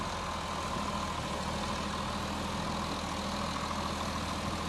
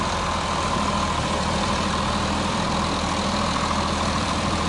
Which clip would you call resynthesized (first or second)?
second